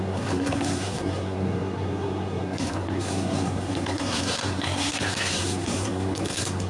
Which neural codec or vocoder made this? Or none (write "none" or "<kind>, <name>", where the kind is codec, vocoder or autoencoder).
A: codec, SNAC